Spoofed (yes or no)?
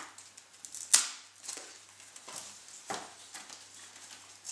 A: no